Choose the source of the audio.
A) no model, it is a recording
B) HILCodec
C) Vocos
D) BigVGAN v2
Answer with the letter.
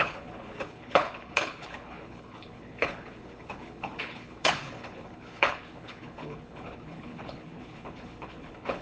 B